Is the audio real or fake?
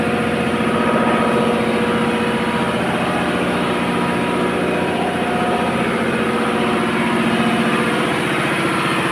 real